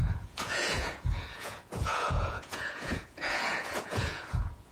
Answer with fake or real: fake